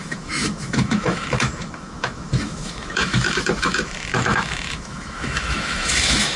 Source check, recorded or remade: remade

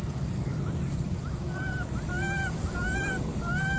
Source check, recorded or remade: recorded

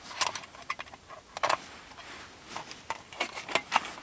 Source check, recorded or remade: recorded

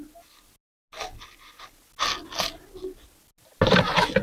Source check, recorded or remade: recorded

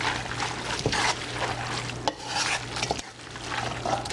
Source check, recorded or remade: recorded